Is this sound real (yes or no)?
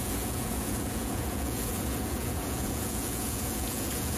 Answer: no